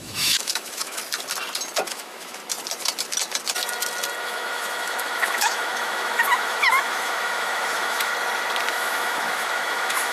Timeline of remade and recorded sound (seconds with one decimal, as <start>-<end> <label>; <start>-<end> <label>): 0.0-1.0 remade; 1.0-1.9 recorded; 1.9-2.4 remade; 2.4-4.2 recorded; 4.2-8.1 remade; 8.1-8.7 recorded; 8.7-10.1 remade